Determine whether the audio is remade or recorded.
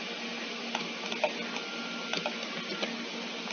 recorded